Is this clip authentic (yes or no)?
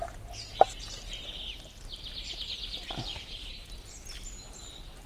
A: yes